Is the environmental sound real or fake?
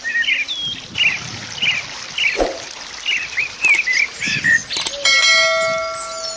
real